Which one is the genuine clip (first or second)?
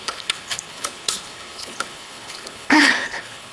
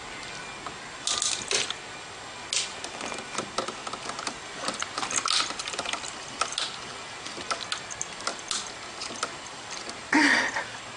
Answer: second